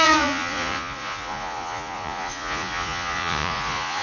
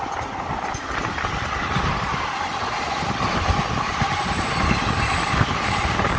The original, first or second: second